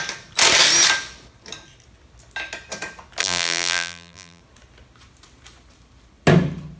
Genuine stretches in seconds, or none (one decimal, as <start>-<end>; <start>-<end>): 0.0-3.2; 4.4-6.8